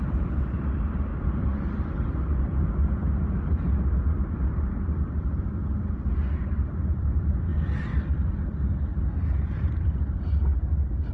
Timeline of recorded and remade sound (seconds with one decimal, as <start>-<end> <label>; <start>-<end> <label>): 0.0-1.1 remade; 1.1-4.1 recorded; 4.1-7.5 remade; 7.5-8.3 recorded; 8.3-8.9 remade; 8.9-9.4 recorded; 9.4-10.5 remade; 10.5-11.1 recorded